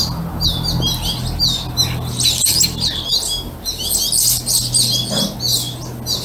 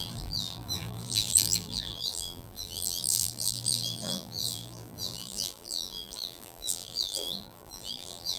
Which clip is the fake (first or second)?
second